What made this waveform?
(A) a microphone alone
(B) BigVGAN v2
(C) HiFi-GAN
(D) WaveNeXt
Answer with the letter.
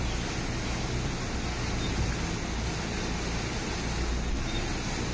A